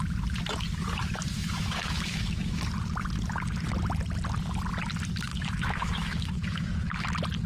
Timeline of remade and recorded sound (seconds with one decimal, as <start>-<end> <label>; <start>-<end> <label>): 0.0-1.3 recorded; 1.3-2.6 remade; 2.6-5.3 recorded; 5.3-7.1 remade; 7.1-7.5 recorded